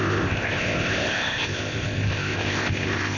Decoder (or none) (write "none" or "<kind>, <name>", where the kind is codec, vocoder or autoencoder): codec, ZipCodec